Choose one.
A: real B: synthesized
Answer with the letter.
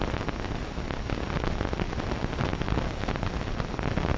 A